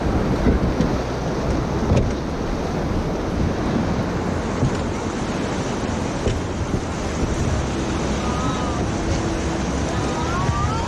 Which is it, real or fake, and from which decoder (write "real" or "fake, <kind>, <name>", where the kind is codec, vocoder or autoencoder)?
real